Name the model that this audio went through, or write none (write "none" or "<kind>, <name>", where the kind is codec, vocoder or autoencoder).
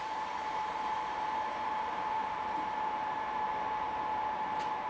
vocoder, BigVGAN v2